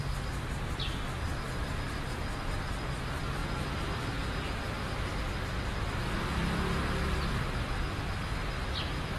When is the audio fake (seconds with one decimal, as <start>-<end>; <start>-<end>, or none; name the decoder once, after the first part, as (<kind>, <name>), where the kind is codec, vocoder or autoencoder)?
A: none